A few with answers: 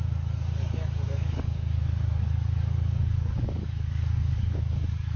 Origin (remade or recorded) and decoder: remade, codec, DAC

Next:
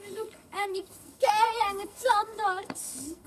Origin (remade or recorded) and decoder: remade, codec, SNAC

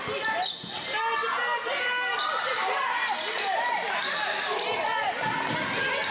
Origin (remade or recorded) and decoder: recorded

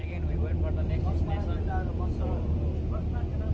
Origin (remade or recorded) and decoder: recorded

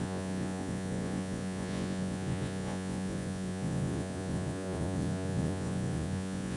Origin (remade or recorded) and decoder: remade, vocoder, Vocos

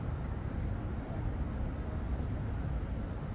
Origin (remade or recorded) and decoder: recorded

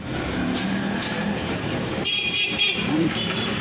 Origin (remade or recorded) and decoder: remade, vocoder, BigVGAN v2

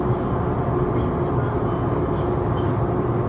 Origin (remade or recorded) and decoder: recorded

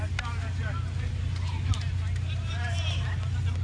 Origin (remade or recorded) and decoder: recorded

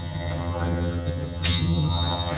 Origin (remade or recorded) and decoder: remade, vocoder, HiFi-GAN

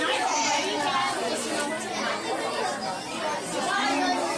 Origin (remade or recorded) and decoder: recorded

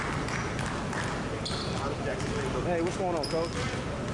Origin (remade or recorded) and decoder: recorded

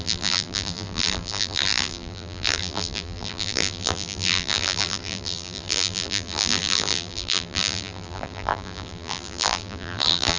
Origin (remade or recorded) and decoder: remade, vocoder, BigVGAN v2